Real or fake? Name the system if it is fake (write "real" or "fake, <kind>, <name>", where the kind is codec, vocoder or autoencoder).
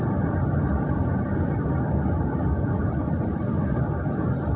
fake, vocoder, BigVGAN v2